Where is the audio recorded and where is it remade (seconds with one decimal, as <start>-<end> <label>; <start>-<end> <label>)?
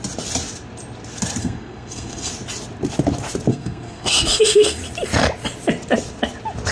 0.0-1.4 recorded; 1.4-2.3 remade; 2.3-3.5 recorded; 3.5-4.8 remade; 4.8-6.7 recorded